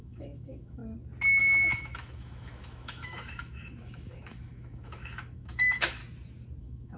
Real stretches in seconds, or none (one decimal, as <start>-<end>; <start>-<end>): 0.8-1.4; 6.0-6.6